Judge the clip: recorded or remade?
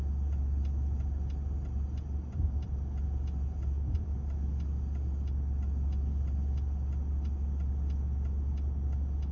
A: recorded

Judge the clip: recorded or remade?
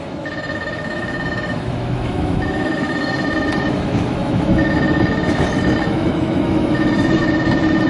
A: remade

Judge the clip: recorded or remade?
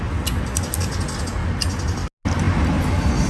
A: recorded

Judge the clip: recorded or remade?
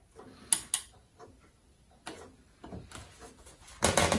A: recorded